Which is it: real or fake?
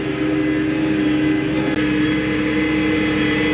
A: real